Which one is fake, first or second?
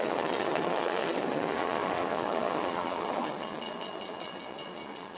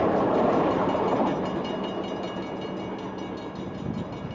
first